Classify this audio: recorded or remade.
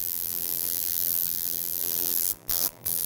remade